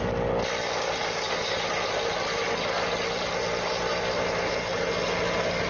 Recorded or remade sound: recorded